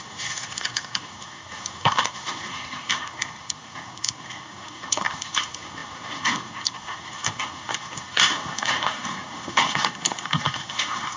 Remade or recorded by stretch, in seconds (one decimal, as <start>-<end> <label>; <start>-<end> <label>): 0.0-11.2 remade